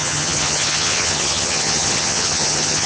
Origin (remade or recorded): remade